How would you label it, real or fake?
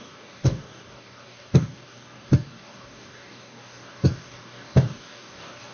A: fake